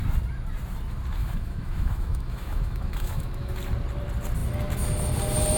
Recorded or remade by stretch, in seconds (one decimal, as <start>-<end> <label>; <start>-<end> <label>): 0.0-1.2 recorded; 1.2-3.5 remade; 3.5-5.6 recorded